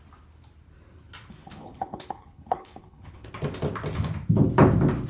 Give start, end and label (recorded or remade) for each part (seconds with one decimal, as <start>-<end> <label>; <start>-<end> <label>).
0.0-1.4 recorded; 1.4-3.3 remade; 3.3-5.1 recorded